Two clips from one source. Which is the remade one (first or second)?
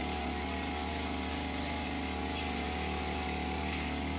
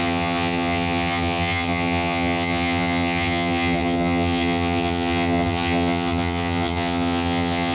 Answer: second